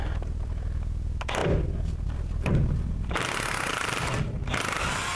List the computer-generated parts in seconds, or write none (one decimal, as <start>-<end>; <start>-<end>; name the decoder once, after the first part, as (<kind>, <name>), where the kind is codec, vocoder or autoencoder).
none